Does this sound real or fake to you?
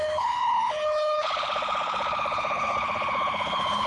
fake